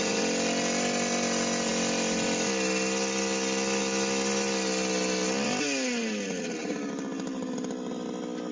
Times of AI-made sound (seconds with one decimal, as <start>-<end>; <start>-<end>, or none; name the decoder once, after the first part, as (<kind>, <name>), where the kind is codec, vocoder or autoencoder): none